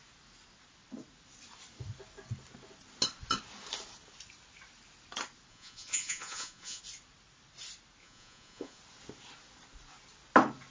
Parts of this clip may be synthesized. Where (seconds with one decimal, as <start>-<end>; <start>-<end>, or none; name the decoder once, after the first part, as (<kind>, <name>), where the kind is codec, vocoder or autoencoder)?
5.5-6.8 (vocoder, Vocos); 8.0-8.8